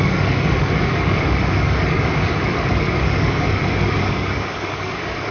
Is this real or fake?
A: fake